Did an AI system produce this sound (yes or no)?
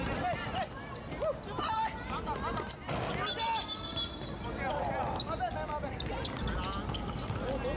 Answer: no